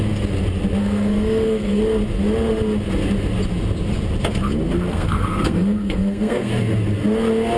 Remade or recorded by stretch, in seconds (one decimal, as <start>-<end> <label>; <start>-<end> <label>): 0.0-0.8 recorded; 0.8-1.8 remade; 1.8-4.9 recorded; 4.9-6.5 remade; 6.5-7.6 recorded